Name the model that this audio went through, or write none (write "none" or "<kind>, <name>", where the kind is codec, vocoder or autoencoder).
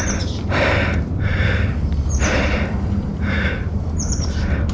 vocoder, BigVGAN v2